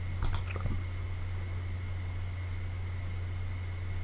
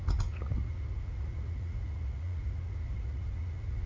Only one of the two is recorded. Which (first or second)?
first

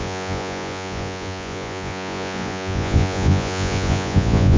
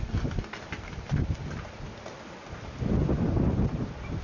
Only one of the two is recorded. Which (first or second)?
second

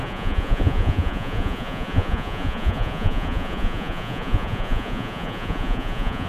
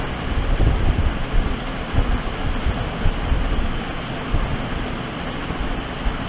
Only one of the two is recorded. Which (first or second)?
second